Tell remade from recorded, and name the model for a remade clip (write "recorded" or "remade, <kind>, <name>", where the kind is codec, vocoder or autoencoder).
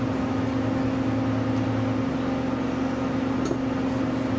recorded